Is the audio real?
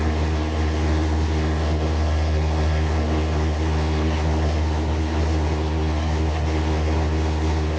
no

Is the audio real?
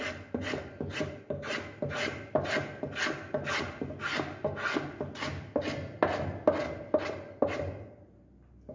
yes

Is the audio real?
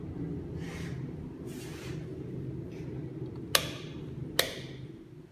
yes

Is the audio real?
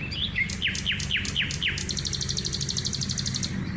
yes